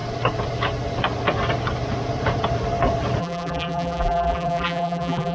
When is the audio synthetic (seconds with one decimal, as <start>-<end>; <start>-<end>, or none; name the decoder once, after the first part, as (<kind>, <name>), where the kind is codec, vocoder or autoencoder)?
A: 3.2-5.3 (vocoder, BigVGAN v2)